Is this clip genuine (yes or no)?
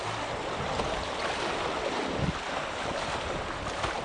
yes